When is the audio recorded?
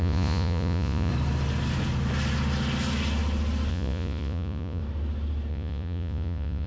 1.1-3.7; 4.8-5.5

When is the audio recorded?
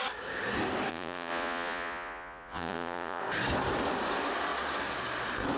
0.0-0.9; 3.2-5.6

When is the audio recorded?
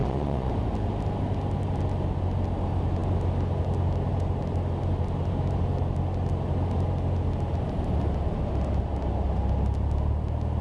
0.5-10.6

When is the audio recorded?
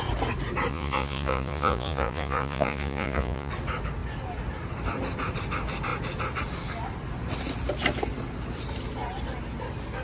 0.0-0.7; 3.5-10.0